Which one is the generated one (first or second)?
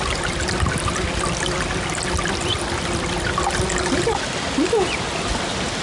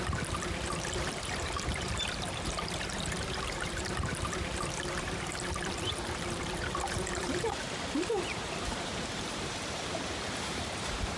second